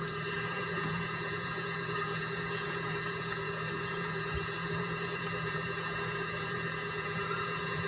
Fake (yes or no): yes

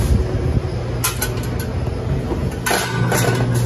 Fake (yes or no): no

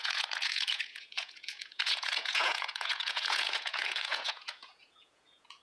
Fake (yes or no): yes